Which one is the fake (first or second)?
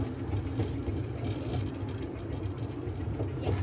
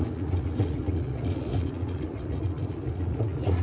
second